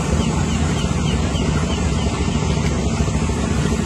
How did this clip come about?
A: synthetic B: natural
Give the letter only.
B